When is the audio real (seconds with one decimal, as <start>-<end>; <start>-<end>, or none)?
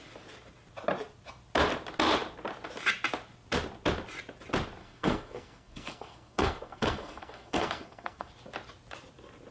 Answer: 0.0-4.8; 8.3-9.5